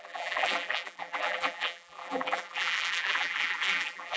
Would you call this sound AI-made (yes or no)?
yes